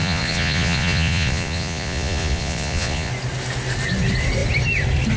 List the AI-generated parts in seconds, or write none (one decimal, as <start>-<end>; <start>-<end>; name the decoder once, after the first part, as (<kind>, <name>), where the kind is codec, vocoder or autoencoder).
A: 0.0-3.1 (vocoder, Vocos)